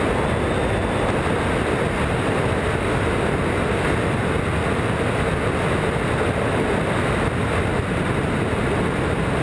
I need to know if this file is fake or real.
real